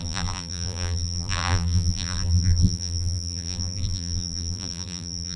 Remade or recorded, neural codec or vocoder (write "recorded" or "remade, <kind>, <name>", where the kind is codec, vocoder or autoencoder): remade, vocoder, BigVGAN v2